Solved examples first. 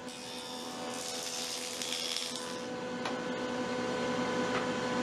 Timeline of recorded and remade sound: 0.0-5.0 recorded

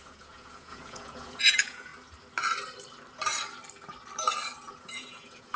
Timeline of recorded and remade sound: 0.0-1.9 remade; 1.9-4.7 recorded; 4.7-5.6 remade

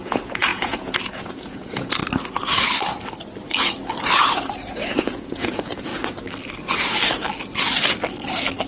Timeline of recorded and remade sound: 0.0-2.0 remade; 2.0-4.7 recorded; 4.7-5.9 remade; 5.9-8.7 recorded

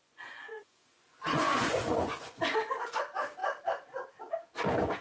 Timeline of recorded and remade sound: 0.0-3.0 remade; 3.0-5.0 recorded